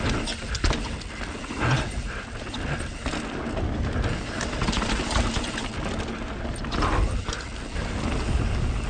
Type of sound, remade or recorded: recorded